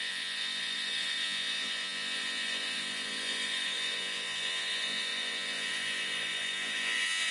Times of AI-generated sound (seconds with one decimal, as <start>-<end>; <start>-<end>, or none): 0.0-7.3